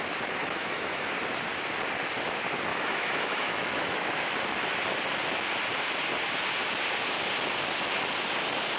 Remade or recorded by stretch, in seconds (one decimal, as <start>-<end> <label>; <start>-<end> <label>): 0.0-0.4 recorded; 0.4-1.1 remade; 1.1-2.7 recorded; 2.7-4.3 remade; 4.3-8.8 recorded